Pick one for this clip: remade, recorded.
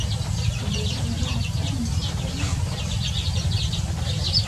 recorded